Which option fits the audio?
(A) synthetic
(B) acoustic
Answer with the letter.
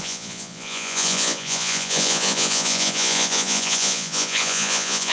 A